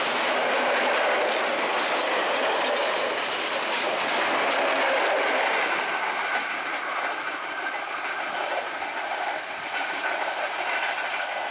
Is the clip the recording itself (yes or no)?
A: yes